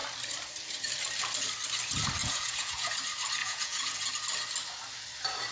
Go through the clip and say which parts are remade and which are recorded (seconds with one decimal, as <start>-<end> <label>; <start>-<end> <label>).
0.0-2.2 recorded; 2.2-2.9 remade; 2.9-3.4 recorded; 3.4-4.1 remade; 4.1-5.5 recorded

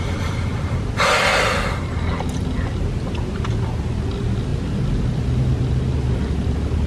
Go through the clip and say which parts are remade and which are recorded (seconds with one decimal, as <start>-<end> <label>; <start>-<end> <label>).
0.0-6.9 recorded

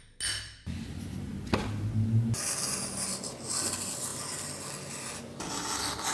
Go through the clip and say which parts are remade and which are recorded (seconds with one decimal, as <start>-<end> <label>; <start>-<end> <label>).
0.0-6.1 recorded

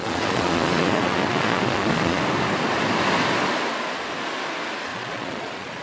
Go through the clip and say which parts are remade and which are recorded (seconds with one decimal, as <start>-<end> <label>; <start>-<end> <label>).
0.0-2.2 remade; 2.2-4.9 recorded; 4.9-5.8 remade

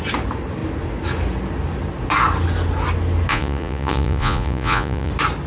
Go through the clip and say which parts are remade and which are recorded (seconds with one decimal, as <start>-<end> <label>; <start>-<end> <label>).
0.0-3.3 recorded; 3.3-5.1 remade; 5.1-5.5 recorded

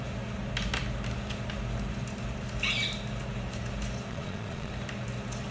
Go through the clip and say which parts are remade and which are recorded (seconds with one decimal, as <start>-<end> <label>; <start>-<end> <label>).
0.0-4.1 recorded; 4.1-4.7 remade; 4.7-5.5 recorded